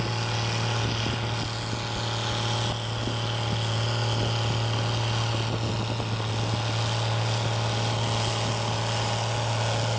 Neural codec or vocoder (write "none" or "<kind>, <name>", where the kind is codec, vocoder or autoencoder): none